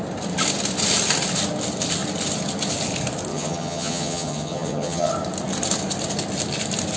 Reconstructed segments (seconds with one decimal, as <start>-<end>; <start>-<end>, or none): 3.3-5.1